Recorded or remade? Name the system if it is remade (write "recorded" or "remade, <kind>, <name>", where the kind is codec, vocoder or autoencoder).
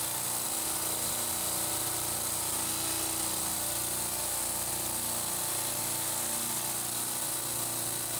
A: recorded